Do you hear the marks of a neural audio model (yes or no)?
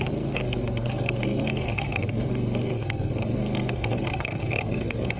yes